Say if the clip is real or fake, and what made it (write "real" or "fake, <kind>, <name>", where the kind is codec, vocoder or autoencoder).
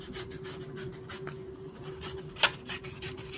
real